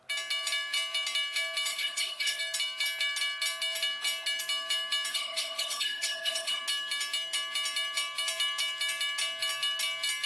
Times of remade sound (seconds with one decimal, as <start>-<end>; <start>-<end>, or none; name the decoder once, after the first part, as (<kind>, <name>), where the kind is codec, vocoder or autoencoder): 1.7-2.4 (codec, HILCodec); 5.1-6.6